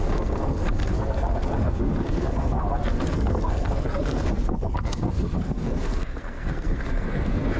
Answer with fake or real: fake